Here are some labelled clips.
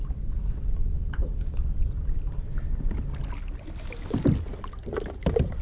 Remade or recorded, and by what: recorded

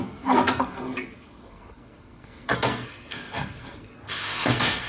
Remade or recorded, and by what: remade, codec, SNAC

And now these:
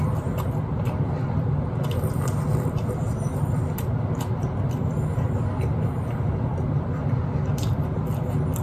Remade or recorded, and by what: recorded